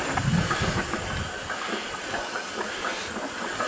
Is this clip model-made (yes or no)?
no